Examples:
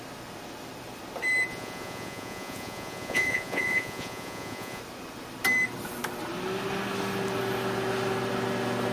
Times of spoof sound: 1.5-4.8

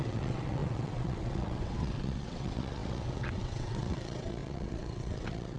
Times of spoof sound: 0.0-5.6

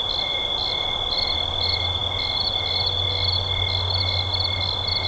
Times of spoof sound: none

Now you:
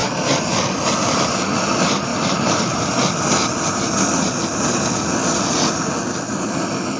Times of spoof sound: none

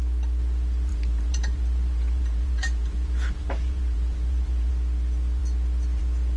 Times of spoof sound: 0.9-4.7